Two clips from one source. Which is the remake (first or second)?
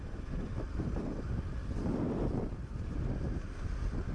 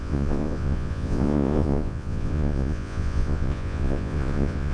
second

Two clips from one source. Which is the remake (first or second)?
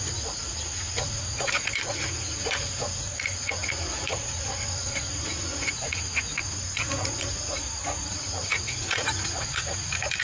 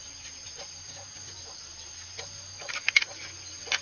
first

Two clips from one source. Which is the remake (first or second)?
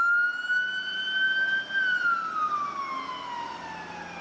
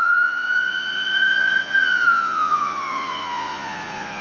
second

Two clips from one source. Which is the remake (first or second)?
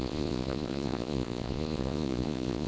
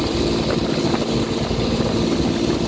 first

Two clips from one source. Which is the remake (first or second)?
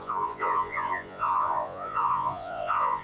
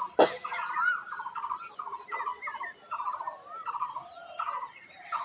first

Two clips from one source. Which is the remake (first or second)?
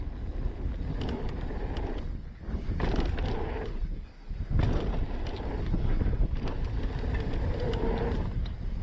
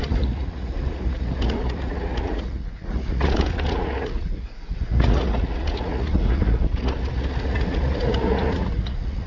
second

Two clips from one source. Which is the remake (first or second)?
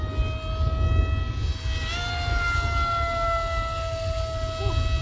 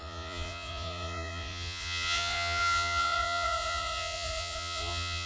second